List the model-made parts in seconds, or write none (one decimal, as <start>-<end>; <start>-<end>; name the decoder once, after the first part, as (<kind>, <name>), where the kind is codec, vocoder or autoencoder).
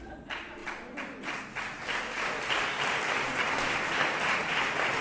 none